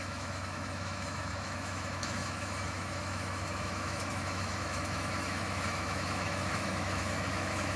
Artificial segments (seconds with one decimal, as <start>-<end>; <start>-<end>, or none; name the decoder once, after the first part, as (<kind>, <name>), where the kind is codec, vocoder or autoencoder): 0.0-7.8 (autoencoder, DAC-VAE)